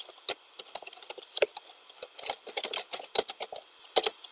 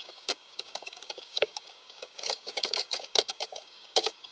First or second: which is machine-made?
second